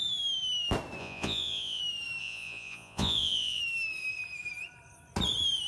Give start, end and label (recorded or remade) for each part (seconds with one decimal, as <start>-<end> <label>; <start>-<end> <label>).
0.0-1.0 recorded; 1.0-1.8 remade; 1.8-2.2 recorded; 2.2-3.6 remade; 3.6-5.7 recorded